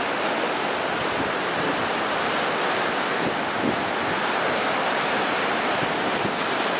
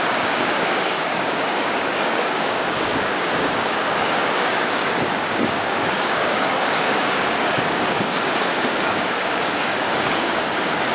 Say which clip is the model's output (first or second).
second